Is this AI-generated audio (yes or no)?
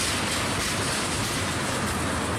no